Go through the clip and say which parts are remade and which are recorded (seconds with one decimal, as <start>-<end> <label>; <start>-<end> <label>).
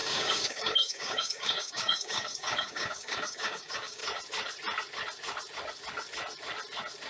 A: 0.0-4.0 remade; 4.0-7.1 recorded